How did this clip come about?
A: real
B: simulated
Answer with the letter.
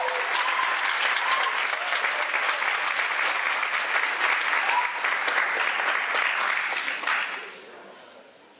A